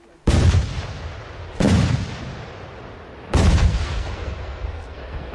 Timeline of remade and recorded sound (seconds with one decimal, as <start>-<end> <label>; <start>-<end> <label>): 0.0-3.5 recorded; 3.5-5.3 remade